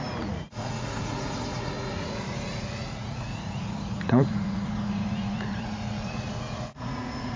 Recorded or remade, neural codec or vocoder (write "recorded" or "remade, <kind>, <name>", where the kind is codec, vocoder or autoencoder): remade, vocoder, Vocos